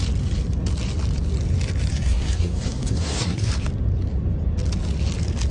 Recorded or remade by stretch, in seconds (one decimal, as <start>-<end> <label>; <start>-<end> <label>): 0.0-1.9 recorded; 1.9-3.5 remade; 3.5-5.5 recorded